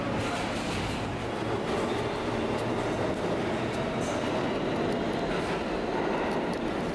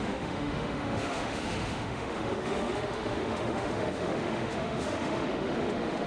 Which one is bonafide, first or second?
first